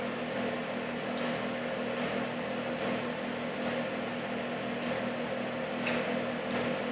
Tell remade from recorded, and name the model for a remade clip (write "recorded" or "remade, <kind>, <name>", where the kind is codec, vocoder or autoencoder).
recorded